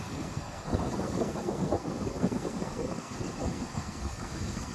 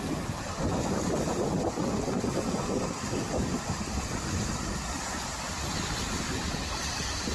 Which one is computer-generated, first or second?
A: first